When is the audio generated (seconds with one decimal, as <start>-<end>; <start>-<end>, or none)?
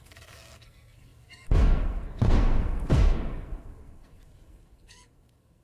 0.0-5.6